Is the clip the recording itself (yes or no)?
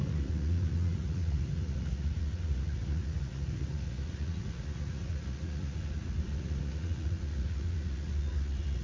no